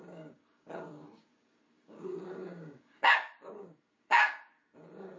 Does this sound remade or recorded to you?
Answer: remade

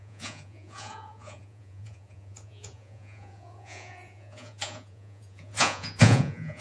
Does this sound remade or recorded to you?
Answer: remade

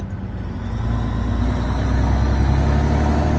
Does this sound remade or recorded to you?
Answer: recorded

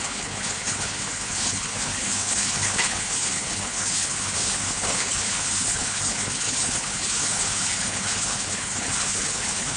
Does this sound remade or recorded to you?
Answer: remade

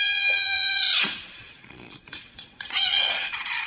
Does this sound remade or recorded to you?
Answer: remade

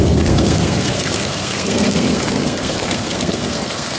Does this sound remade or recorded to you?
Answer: remade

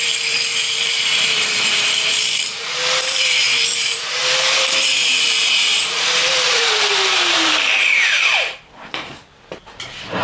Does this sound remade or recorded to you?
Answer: remade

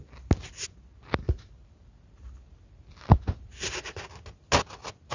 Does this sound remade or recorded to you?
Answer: recorded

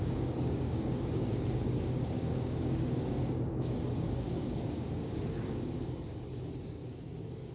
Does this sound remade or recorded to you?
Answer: remade